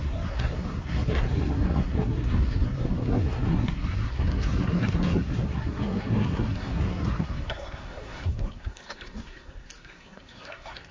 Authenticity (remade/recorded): remade